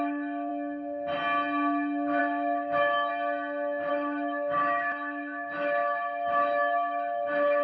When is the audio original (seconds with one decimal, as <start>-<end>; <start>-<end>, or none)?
0.5-2.2; 3.1-3.9

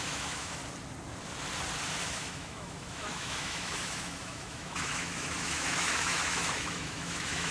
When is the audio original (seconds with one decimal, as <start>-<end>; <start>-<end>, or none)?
0.6-2.1

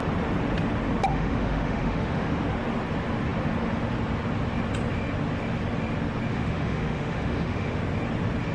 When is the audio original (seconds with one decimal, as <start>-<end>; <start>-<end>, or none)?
0.0-1.1; 2.4-6.3; 7.8-8.5

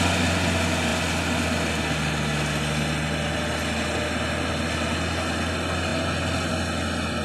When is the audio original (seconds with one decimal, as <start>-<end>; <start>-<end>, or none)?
0.0-7.2

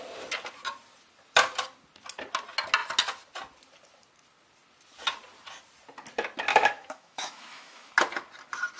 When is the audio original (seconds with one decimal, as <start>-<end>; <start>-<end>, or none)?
0.0-6.5; 7.9-8.8

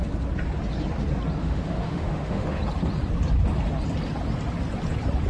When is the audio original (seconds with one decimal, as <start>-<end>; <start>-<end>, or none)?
0.0-1.4; 2.6-5.3